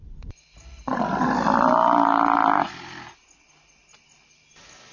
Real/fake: real